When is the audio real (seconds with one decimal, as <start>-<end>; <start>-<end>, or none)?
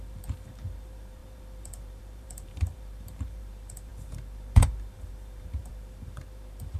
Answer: none